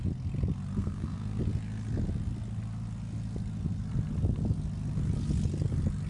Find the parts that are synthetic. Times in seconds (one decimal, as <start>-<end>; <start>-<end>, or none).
0.8-1.4